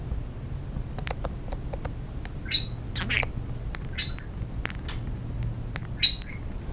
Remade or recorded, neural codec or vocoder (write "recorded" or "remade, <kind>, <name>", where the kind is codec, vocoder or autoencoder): recorded